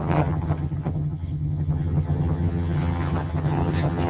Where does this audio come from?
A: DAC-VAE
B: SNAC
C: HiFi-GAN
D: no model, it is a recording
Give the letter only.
C